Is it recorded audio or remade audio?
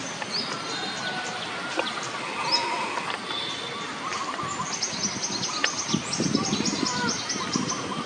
recorded